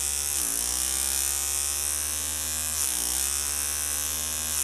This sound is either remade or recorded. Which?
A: recorded